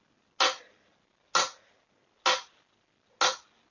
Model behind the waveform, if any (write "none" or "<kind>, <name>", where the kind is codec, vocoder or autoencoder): none